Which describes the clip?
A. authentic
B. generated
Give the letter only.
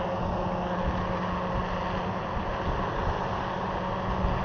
A